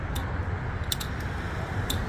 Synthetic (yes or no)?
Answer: no